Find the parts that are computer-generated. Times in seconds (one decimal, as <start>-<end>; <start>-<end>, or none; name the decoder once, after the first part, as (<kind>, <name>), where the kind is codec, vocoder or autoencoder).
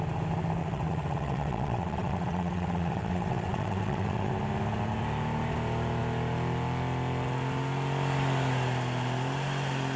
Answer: 0.6-4.3 (vocoder, WaveNeXt)